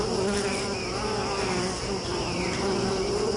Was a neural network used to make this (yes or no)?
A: no